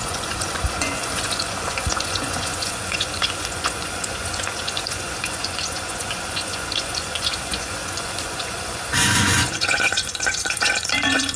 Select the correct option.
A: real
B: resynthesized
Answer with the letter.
B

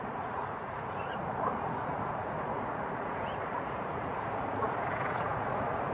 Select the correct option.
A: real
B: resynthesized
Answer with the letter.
B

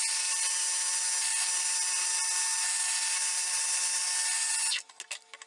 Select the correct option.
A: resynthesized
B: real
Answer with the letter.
B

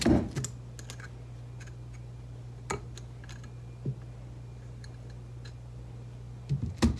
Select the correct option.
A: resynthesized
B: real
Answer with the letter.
B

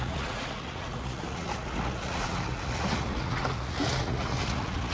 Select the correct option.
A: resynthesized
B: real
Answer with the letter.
A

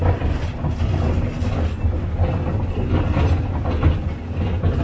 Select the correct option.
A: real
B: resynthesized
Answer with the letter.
A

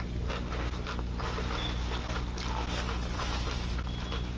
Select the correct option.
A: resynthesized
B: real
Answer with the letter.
B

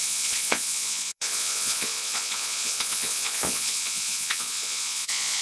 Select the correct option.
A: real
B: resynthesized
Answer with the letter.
B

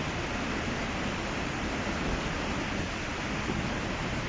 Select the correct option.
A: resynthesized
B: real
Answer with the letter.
B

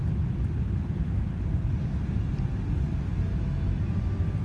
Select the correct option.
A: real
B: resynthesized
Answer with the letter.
A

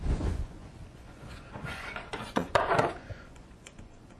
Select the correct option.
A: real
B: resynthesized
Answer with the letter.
B